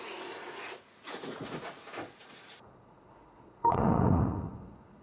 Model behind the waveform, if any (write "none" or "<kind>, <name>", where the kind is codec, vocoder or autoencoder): vocoder, Vocos